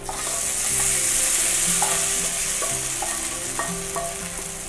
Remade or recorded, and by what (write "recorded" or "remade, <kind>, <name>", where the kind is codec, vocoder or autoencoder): recorded